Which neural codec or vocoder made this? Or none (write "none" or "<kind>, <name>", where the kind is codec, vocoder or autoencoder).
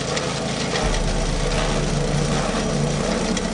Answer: none